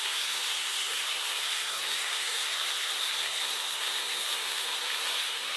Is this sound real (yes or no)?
no